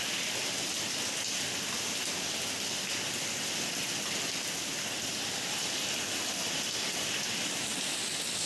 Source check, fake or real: real